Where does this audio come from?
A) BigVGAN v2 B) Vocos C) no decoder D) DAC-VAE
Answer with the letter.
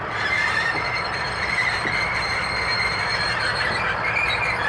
A